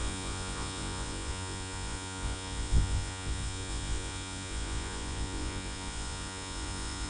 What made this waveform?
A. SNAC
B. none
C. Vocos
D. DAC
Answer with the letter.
C